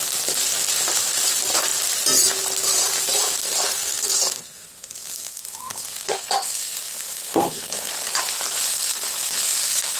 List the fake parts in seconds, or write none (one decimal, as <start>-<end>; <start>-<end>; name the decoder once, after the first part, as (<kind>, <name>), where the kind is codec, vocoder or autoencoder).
3.4-7.9 (codec, SNAC); 8.7-10.0